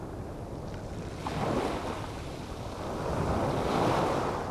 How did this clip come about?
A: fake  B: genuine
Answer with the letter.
B